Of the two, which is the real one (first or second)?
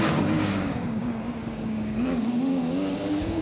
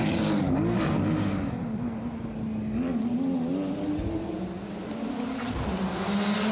second